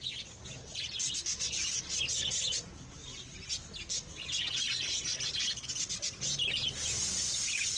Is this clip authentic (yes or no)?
yes